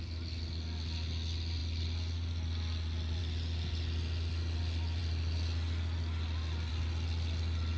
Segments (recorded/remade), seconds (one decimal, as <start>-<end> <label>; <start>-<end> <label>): 0.0-7.8 recorded